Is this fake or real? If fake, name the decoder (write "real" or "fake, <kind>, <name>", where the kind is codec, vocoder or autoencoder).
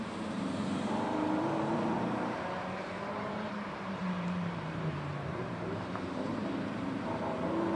fake, vocoder, BigVGAN v2